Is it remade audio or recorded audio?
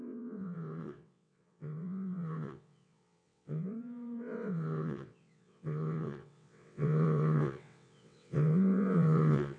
remade